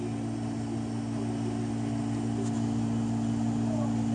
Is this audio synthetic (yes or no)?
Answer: no